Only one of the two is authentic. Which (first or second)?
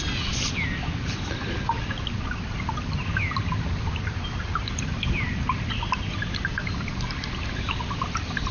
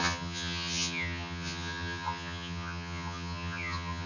first